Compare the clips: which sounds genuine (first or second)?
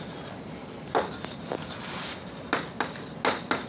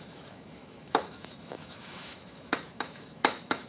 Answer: first